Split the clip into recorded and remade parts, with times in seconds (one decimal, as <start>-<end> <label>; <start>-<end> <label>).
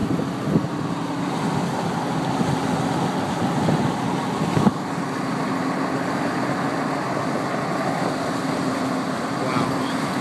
0.0-10.2 recorded